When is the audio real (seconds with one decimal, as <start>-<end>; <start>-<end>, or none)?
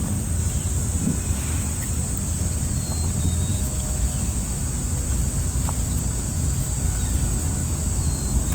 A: 0.0-3.5; 4.6-7.6